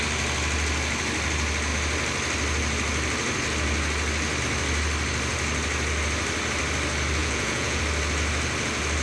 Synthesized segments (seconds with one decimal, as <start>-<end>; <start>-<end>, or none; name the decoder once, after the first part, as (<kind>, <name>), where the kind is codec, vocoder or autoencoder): 7.2-7.8 (vocoder, Vocos)